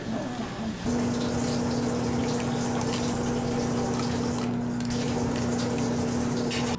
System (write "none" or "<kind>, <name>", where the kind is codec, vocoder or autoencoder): none